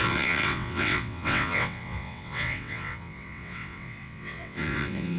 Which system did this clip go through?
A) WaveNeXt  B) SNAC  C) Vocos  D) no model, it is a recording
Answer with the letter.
A